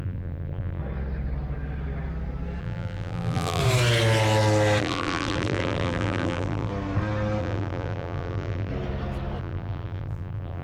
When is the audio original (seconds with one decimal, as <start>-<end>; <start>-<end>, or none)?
0.8-2.6; 3.6-4.8; 6.7-7.4; 8.7-9.4